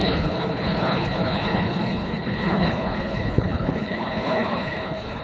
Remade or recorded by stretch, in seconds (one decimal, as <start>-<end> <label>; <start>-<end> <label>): 0.0-5.2 remade